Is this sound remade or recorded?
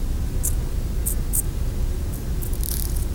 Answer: recorded